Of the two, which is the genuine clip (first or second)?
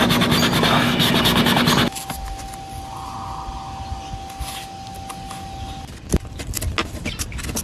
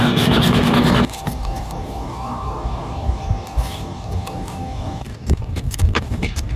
first